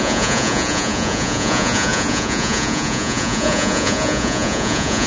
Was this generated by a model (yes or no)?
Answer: yes